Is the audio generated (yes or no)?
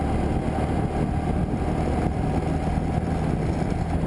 no